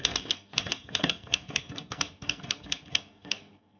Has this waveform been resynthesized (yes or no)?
yes